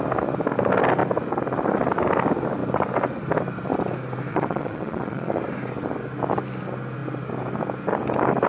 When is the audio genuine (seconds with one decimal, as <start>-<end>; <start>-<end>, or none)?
0.0-4.3; 5.4-8.5